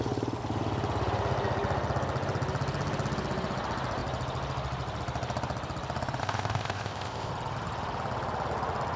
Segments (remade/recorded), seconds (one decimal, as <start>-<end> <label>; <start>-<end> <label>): 0.0-6.2 recorded; 6.2-7.3 remade; 7.3-9.0 recorded